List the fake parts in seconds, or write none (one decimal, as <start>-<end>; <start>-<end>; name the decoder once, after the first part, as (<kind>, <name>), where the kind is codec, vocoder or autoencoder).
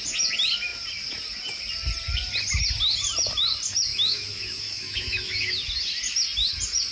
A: 3.9-5.6 (autoencoder, DAC-VAE)